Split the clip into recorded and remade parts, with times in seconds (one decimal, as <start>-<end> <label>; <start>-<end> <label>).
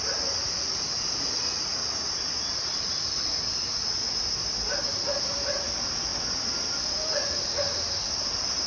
0.0-8.7 recorded